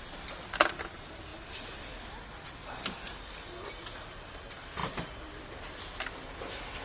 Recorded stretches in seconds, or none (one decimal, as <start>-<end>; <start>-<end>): 0.0-1.3; 2.5-4.8; 6.0-6.8